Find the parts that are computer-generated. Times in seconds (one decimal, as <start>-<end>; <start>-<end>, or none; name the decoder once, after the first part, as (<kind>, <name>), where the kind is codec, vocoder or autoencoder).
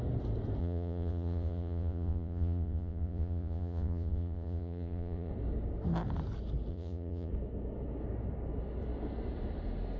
0.6-5.3 (vocoder, Vocos); 6.7-7.3